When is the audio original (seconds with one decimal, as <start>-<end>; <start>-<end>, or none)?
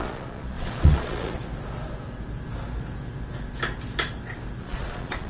1.4-4.6